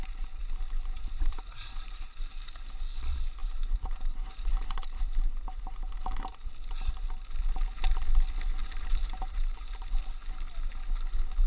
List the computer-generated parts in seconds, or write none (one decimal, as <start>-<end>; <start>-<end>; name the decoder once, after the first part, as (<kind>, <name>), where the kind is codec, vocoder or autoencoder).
0.4-2.5 (vocoder, BigVGAN v2); 3.4-6.9; 8.6-10.1